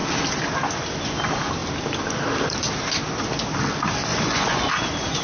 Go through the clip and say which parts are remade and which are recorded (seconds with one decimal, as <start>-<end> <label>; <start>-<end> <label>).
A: 0.0-4.1 recorded; 4.1-4.7 remade; 4.7-5.2 recorded